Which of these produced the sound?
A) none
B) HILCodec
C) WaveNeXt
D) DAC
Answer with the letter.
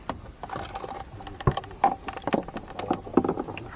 A